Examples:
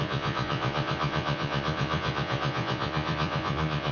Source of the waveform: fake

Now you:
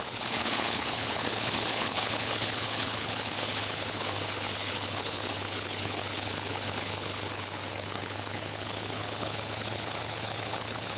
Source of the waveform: fake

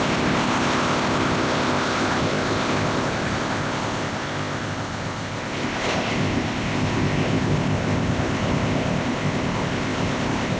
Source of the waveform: fake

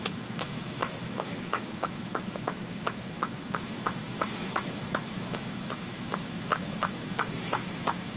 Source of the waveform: fake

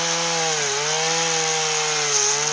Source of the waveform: real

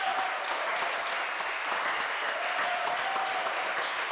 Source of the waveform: real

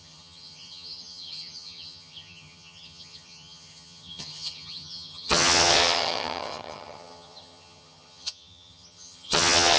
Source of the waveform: fake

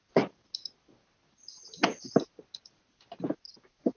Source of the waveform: real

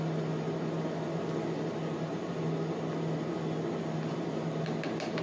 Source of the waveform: real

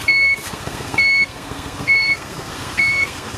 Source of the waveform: fake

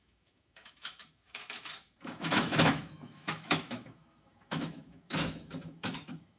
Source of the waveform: fake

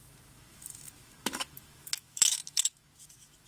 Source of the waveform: fake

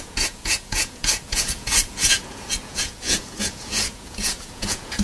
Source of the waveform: fake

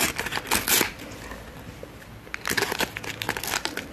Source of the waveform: real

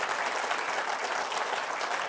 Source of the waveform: real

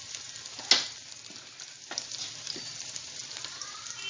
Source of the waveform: real